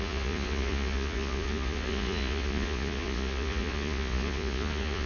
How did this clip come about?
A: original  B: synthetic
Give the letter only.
B